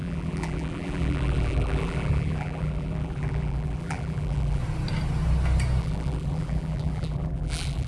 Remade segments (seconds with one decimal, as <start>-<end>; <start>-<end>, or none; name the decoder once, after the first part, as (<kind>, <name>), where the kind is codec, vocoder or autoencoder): 0.0-4.6 (vocoder, BigVGAN v2); 5.8-7.9